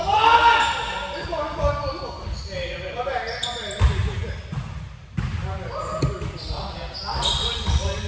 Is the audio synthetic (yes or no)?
no